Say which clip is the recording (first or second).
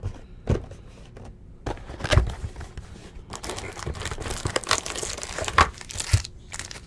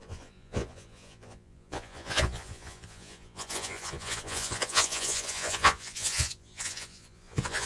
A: first